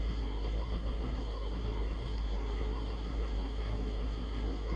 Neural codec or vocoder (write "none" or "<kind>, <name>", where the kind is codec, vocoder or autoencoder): codec, SNAC